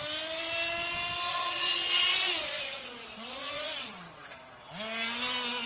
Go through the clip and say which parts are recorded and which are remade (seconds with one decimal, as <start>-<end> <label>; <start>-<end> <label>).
0.0-1.3 recorded; 1.3-4.7 remade; 4.7-5.7 recorded